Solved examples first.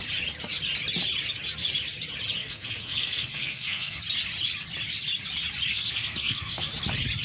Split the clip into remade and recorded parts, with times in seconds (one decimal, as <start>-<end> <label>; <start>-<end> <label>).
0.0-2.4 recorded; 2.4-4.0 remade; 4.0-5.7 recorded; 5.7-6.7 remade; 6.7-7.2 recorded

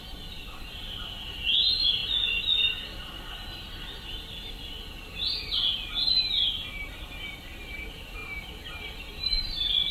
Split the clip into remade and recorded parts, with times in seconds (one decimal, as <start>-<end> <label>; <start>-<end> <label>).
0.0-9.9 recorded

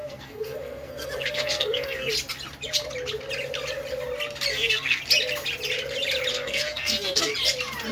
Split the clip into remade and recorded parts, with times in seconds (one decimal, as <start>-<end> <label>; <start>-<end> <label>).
0.0-2.1 remade; 2.1-4.5 recorded; 4.5-5.0 remade; 5.0-6.3 recorded; 6.3-7.3 remade; 7.3-7.9 recorded

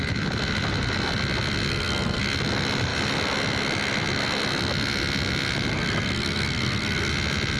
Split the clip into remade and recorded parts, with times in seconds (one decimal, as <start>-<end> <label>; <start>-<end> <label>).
0.0-1.7 recorded; 1.7-2.2 remade; 2.2-5.7 recorded; 5.7-7.1 remade; 7.1-7.6 recorded

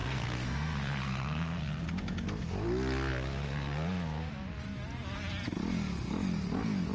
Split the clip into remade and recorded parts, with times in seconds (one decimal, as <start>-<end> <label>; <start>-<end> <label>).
0.0-1.6 remade; 1.6-6.9 recorded